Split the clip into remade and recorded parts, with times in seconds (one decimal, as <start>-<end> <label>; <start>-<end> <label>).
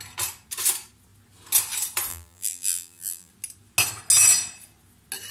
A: 0.0-2.1 recorded; 2.1-3.3 remade; 3.3-5.3 recorded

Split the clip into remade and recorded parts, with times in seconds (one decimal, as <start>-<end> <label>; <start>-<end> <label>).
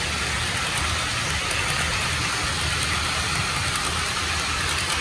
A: 0.0-3.0 recorded; 3.0-3.6 remade; 3.6-5.0 recorded